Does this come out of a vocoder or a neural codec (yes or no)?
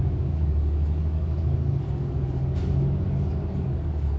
yes